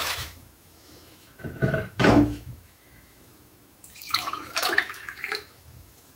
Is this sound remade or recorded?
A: remade